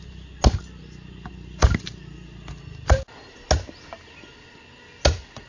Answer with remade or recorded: recorded